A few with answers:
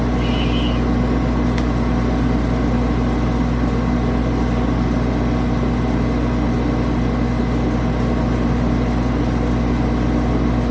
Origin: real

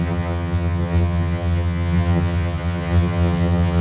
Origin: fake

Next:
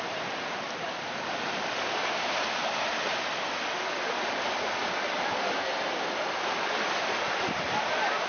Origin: fake